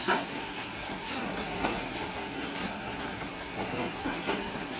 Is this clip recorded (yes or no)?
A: no